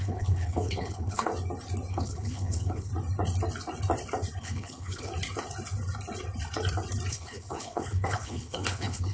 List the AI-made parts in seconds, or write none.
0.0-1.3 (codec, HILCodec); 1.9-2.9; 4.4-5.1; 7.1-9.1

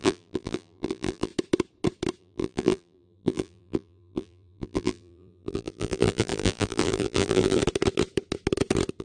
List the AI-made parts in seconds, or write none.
0.0-1.3 (vocoder, BigVGAN v2); 2.2-7.6

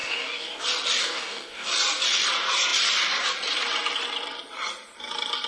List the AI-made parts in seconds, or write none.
0.0-0.6 (codec, DAC); 1.0-1.7

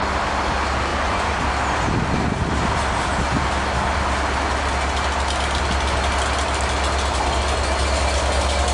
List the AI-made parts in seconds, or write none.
0.9-1.5 (vocoder, Vocos)